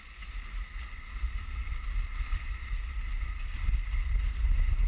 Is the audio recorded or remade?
recorded